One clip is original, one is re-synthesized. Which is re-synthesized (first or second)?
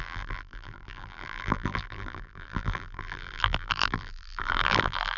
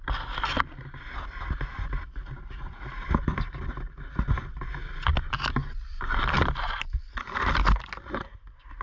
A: first